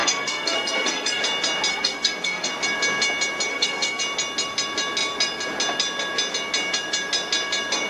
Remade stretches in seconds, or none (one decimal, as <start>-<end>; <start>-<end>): 0.0-1.2; 1.7-2.5; 3.5-4.0

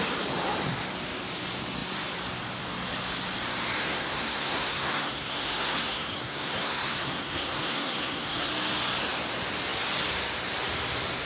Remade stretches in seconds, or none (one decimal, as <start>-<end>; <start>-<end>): 3.8-8.5

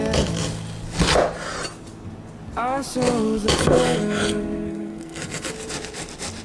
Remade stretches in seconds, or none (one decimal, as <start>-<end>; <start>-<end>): 3.6-5.5

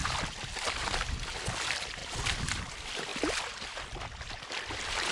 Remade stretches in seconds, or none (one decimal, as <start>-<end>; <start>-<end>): none

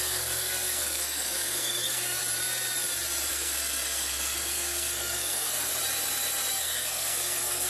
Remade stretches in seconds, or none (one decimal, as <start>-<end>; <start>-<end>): 0.0-2.2; 3.3-5.7; 6.5-7.7

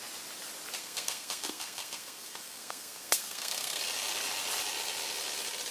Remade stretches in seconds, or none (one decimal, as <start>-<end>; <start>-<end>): 0.8-3.8

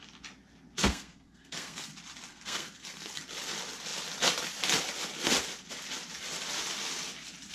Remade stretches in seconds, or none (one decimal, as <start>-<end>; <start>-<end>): 0.8-1.9; 2.3-3.2